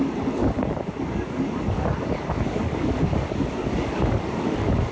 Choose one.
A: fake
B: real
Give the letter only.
A